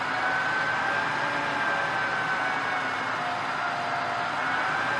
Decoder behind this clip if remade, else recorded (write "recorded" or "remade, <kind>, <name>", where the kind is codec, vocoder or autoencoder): recorded